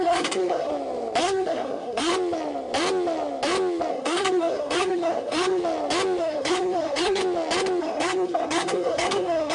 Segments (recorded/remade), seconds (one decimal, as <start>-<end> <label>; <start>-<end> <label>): 0.0-0.7 remade; 0.7-1.2 recorded; 1.2-2.1 remade; 2.1-3.9 recorded; 3.9-5.6 remade; 5.6-6.2 recorded; 6.2-7.2 remade; 7.2-7.8 recorded; 7.8-9.5 remade